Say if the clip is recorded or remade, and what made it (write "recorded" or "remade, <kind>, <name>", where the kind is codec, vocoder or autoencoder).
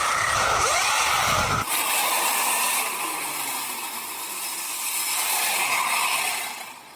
recorded